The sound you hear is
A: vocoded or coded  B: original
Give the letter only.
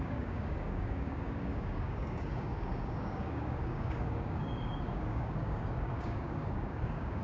A